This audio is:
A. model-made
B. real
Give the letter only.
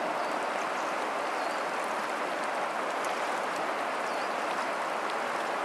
B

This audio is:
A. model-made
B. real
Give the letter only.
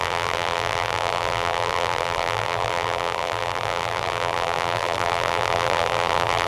A